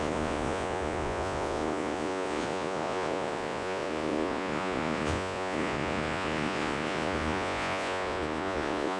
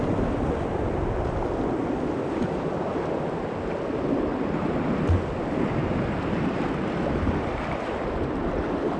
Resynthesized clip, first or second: first